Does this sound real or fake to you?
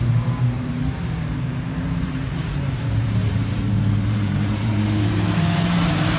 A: fake